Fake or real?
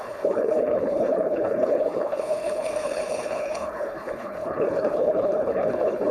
fake